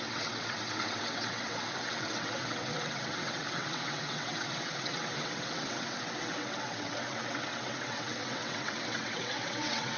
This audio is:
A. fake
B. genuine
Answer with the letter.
A